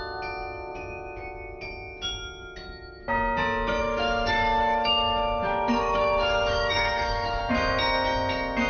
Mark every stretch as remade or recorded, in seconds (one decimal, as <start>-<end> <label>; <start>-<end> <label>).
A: 0.0-3.8 recorded; 3.8-7.4 remade; 7.4-8.7 recorded